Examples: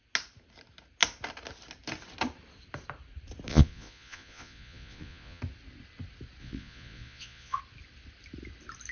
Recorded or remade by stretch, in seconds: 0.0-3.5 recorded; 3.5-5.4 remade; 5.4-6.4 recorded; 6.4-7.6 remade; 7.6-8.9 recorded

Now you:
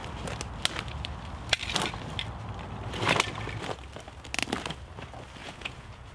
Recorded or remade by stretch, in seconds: 0.0-5.4 recorded; 5.4-6.1 remade

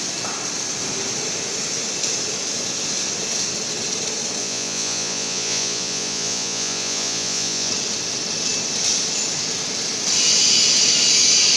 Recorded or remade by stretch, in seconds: 0.0-4.4 recorded; 4.4-7.7 remade; 7.7-11.6 recorded

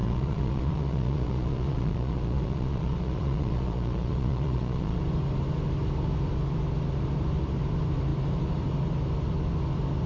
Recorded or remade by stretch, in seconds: 0.0-5.0 remade; 5.0-10.1 recorded

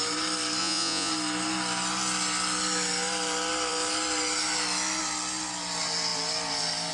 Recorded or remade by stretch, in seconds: 0.0-0.6 recorded; 0.6-1.1 remade; 1.1-6.9 recorded

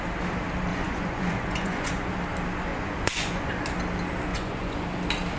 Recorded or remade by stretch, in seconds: 0.0-0.7 recorded; 0.7-2.1 remade; 2.1-2.7 recorded; 2.7-3.5 remade; 3.5-4.3 recorded; 4.3-4.8 remade; 4.8-5.4 recorded